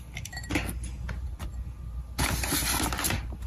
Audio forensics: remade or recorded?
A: recorded